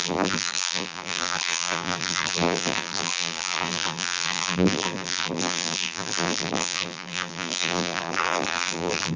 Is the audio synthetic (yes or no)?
yes